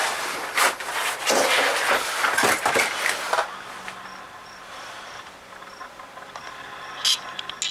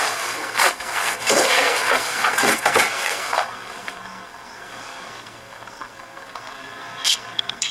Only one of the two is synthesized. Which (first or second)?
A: second